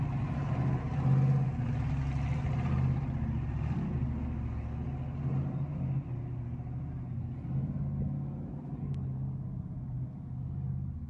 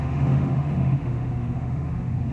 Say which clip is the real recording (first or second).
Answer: first